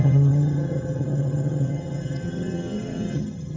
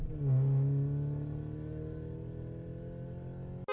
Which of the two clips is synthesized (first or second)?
first